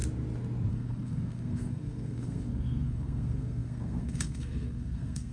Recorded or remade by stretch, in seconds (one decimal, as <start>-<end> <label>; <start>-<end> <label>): 0.0-0.7 recorded; 0.7-5.3 remade